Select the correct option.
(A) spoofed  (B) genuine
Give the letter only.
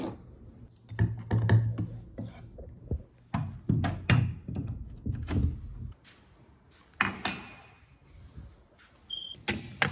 B